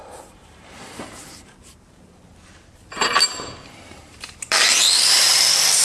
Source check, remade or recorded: remade